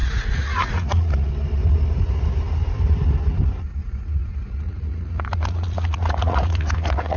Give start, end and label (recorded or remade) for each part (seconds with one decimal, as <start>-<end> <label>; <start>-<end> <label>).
0.0-1.3 remade; 1.3-3.8 recorded; 3.8-7.2 remade